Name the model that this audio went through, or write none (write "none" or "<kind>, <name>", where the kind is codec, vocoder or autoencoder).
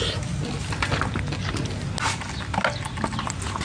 none